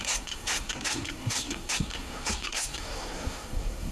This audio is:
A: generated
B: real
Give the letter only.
A